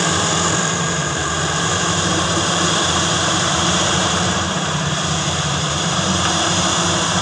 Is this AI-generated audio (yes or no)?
yes